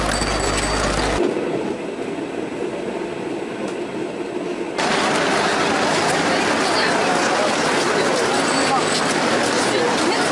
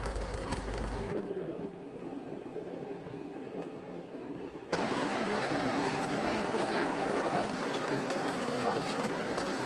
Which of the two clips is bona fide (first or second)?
first